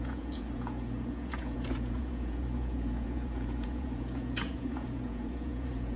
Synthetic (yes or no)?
yes